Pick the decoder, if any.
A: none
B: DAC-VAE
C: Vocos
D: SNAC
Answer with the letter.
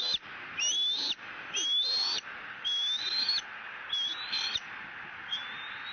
A